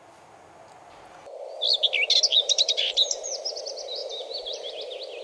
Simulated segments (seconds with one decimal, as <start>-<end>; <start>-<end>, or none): 2.3-3.6; 4.0-4.7